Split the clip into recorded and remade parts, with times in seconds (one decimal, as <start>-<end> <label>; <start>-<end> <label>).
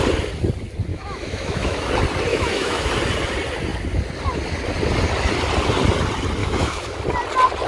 0.0-0.9 recorded; 0.9-1.9 remade; 1.9-2.3 recorded; 2.3-2.9 remade; 2.9-6.4 recorded; 6.4-7.0 remade; 7.0-7.7 recorded